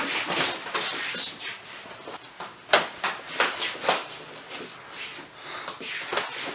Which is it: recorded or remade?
recorded